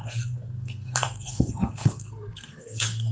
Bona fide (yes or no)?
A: no